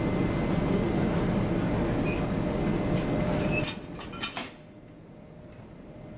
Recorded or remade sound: recorded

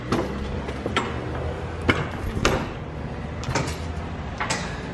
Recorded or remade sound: recorded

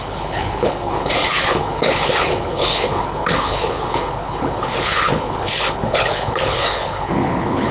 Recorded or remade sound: remade